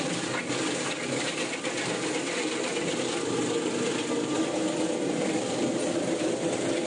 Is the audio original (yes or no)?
yes